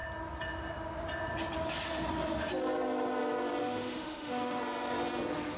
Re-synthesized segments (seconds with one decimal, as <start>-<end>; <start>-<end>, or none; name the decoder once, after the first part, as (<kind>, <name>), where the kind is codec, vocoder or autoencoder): 3.6-4.6 (autoencoder, DAC-VAE)